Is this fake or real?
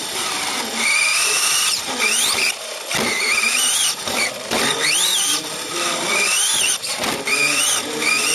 fake